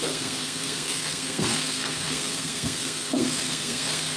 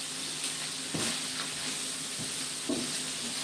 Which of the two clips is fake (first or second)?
first